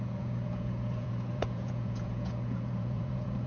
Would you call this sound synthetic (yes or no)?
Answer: yes